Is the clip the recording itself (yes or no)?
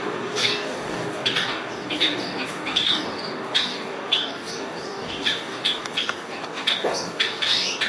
no